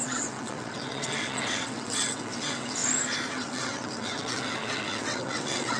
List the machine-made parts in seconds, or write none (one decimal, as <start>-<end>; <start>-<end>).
0.0-2.8; 3.3-5.8